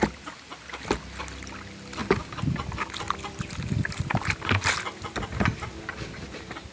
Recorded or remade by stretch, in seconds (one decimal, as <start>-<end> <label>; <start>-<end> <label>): 0.0-6.7 recorded